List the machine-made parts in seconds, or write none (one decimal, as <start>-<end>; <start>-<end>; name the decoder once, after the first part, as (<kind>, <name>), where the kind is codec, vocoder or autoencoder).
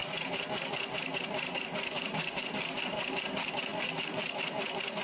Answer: none